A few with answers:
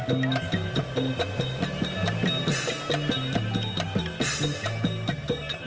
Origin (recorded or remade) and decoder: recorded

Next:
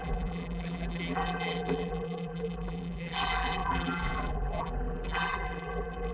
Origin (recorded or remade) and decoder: remade, vocoder, BigVGAN v2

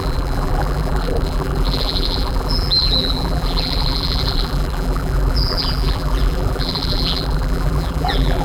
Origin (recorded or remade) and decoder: remade, vocoder, BigVGAN v2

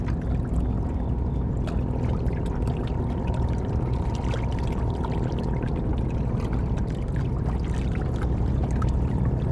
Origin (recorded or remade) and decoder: recorded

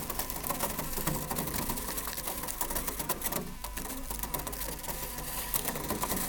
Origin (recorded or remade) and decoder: recorded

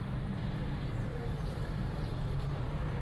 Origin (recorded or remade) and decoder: recorded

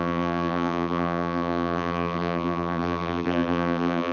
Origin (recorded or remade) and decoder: remade, vocoder, BigVGAN v2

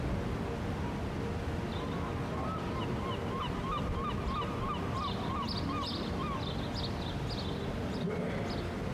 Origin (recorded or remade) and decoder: recorded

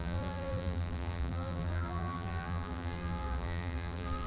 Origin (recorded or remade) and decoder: remade, vocoder, BigVGAN v2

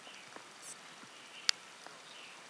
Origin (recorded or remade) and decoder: remade, vocoder, BigVGAN v2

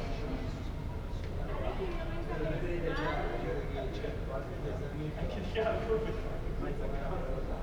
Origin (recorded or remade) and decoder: recorded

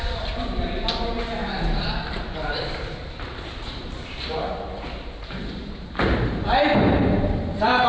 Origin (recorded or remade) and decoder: remade, vocoder, BigVGAN v2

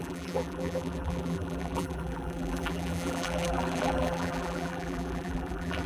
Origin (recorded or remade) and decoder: remade, vocoder, BigVGAN v2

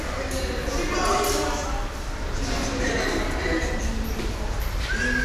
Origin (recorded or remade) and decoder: recorded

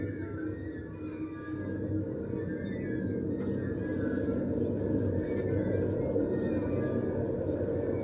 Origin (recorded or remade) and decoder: recorded